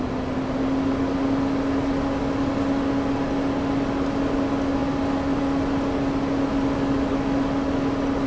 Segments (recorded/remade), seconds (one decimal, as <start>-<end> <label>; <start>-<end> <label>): 0.0-8.3 recorded